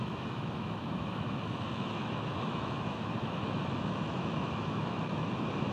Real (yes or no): no